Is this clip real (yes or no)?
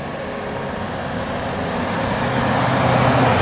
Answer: yes